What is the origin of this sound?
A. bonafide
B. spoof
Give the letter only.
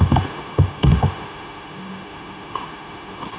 B